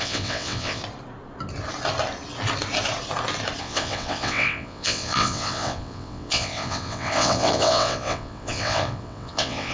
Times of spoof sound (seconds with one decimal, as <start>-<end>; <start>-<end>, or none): 0.0-0.8; 3.6-9.7